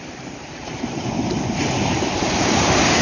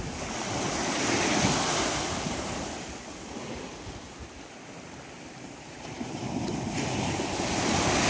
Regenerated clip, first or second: first